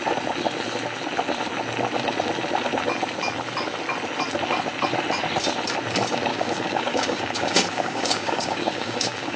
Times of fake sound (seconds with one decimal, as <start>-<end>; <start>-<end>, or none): 6.3-9.4

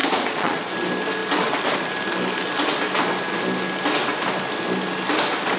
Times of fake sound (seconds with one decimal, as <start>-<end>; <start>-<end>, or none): 0.0-0.7